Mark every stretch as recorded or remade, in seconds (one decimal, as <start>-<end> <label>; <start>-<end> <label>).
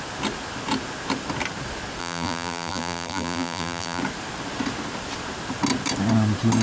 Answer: 0.0-2.0 recorded; 2.0-4.0 remade; 4.0-6.6 recorded